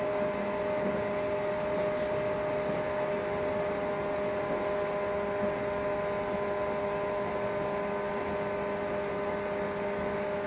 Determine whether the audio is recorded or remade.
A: recorded